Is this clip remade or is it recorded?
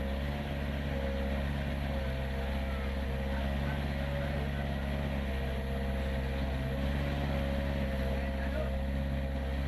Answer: recorded